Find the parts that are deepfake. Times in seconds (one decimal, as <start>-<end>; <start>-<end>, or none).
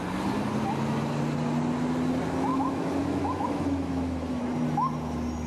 2.5-4.4